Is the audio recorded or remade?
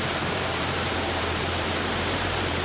remade